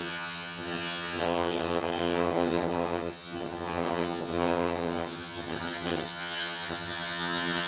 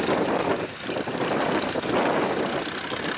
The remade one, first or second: first